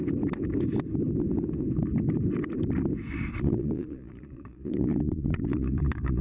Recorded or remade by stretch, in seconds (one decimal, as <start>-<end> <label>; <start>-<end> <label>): 0.0-3.4 recorded; 3.4-6.2 remade